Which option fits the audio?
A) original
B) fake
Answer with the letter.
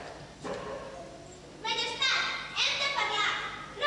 A